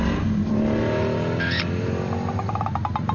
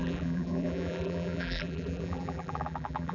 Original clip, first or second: first